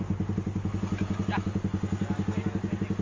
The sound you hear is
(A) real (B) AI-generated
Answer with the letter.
A